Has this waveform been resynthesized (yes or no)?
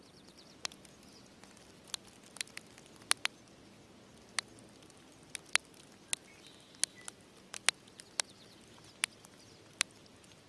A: no